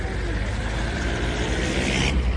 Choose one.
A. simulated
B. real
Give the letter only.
B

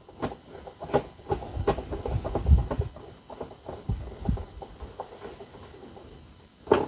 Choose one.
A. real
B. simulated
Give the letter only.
A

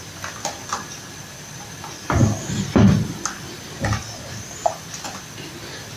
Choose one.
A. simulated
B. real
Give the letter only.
B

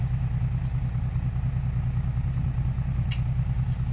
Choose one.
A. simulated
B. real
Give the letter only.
B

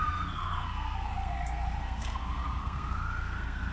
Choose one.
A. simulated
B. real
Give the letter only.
A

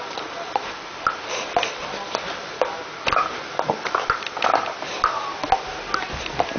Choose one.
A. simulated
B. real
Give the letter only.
B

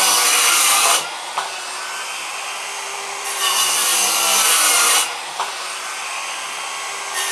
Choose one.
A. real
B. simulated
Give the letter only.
B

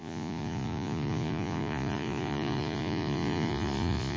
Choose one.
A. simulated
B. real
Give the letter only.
A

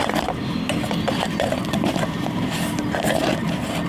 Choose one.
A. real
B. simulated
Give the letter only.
A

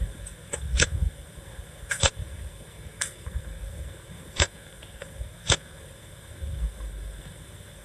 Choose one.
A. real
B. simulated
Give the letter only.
B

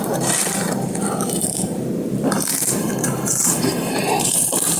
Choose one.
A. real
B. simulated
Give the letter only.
B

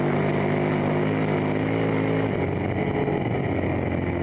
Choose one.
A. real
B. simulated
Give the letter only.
A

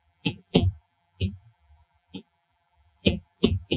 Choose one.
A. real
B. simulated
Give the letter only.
B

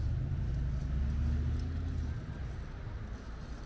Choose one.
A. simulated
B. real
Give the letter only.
B